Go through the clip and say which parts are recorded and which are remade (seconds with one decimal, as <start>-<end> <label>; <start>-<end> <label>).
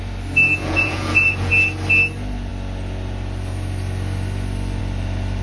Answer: 0.0-0.6 recorded; 0.6-1.5 remade; 1.5-5.4 recorded